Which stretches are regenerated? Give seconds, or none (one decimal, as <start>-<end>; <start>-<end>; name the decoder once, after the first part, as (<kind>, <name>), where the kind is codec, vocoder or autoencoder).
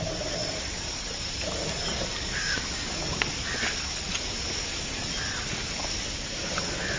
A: 0.4-2.8 (vocoder, BigVGAN v2)